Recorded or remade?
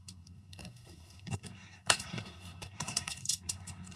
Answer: remade